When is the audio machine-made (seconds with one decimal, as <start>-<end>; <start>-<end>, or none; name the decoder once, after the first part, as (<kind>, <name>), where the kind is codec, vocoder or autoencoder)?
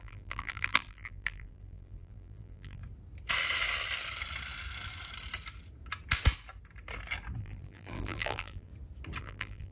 0.0-2.8 (vocoder, BigVGAN v2); 7.4-8.7; 9.2-9.7